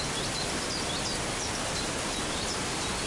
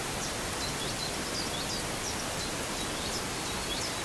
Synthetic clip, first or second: first